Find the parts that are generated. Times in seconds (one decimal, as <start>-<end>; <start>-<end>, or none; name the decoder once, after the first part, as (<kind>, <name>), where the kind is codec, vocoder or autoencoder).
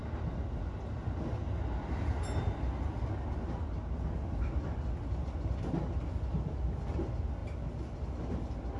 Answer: none